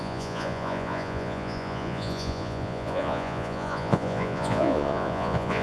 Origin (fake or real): fake